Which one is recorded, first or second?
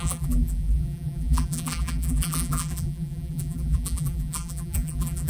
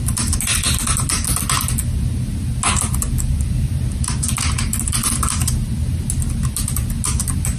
second